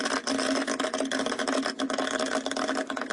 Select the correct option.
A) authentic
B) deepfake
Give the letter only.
A